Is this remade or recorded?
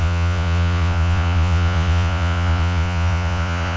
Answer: remade